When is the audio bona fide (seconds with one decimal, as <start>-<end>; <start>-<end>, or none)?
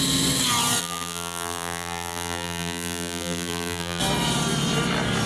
0.0-0.8; 4.0-5.3